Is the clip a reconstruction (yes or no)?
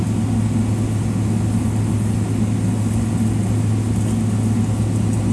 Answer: no